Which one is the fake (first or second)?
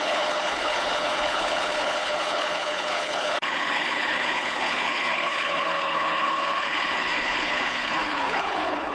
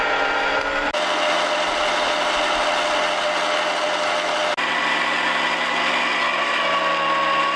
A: first